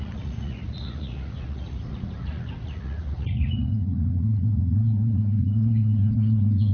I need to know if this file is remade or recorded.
remade